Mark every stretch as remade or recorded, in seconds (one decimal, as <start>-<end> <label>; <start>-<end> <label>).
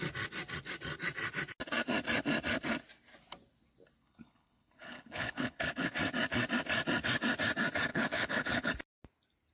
0.0-4.0 recorded; 4.0-5.9 remade; 5.9-7.9 recorded; 7.9-8.7 remade; 8.7-9.5 recorded